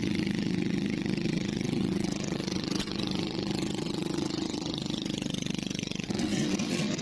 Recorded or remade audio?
remade